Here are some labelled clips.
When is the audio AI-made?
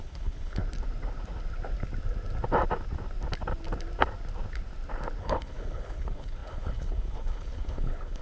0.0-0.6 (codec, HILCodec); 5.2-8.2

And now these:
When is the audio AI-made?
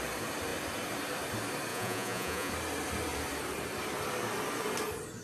1.7-2.5 (vocoder, Vocos)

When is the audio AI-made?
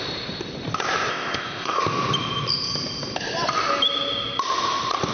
1.1-1.8 (codec, ZipCodec)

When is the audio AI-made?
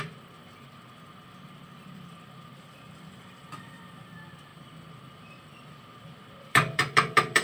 0.0-4.5 (vocoder, BigVGAN v2); 5.4-7.4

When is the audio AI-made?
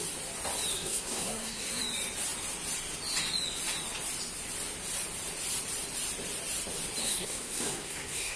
0.7-1.8 (codec, SNAC); 7.0-8.4